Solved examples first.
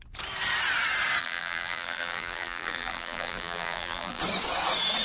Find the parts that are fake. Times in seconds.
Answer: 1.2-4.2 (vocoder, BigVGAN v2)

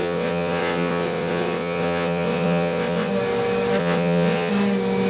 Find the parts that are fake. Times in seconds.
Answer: 0.0-3.1 (vocoder, WaveNeXt); 3.8-4.5

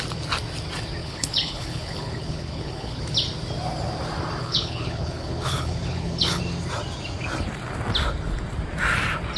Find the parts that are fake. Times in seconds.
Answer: 1.0-3.0 (codec, HILCodec); 4.4-6.4

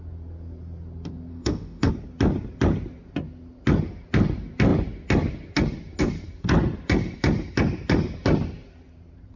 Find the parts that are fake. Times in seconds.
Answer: 1.3-1.9 (autoencoder, DAC-VAE)

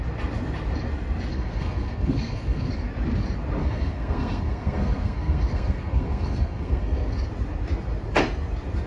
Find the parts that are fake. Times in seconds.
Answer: 1.3-2.7 (codec, SNAC); 3.6-7.1

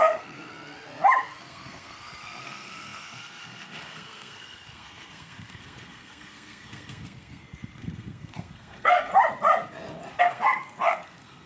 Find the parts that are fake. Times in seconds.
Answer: 0.0-0.5 (codec, SNAC); 1.4-9.1; 10.2-11.5